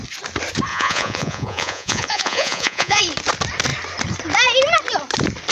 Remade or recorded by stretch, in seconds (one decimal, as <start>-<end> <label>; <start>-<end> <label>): 0.0-0.7 recorded; 0.7-3.0 remade; 3.0-5.5 recorded